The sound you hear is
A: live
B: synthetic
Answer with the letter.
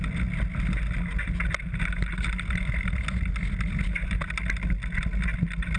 A